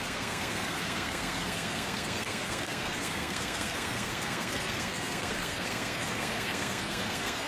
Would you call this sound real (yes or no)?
no